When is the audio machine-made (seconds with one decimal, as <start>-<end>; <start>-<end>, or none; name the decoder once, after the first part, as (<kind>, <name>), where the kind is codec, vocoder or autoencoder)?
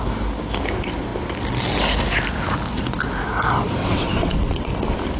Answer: 3.8-4.7 (vocoder, WaveNeXt)